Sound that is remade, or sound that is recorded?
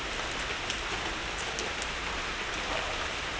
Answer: recorded